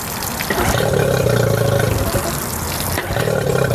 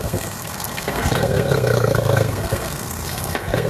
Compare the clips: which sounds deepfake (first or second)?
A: second